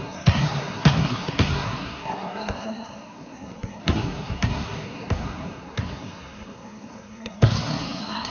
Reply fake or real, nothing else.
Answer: fake